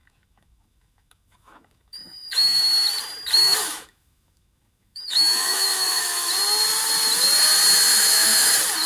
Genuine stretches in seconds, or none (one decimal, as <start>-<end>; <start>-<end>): 2.6-3.4; 6.3-7.9; 8.5-8.9